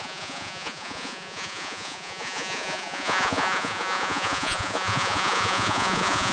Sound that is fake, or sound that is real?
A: fake